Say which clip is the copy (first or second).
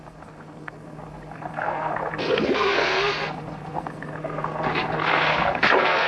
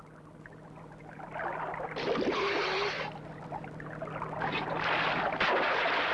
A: first